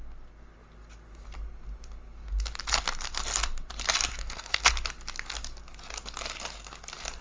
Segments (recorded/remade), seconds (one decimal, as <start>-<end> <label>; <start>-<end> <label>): 0.0-4.2 recorded; 4.2-4.7 remade; 4.7-7.2 recorded